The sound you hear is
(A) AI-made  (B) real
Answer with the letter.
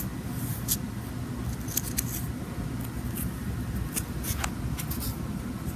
B